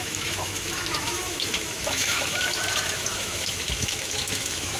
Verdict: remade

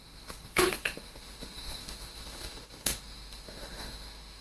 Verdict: remade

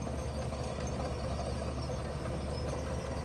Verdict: recorded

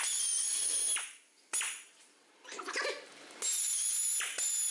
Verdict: recorded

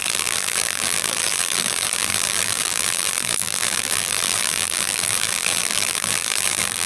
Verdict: remade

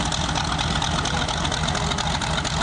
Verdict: recorded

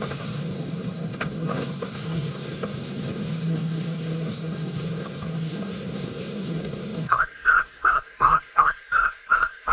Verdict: remade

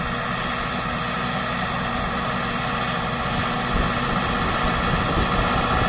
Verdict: recorded